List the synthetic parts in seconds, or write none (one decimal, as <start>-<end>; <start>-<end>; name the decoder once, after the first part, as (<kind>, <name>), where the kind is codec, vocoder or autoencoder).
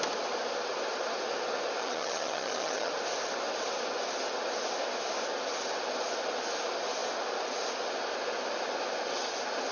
1.8-2.9 (vocoder, HiFi-GAN)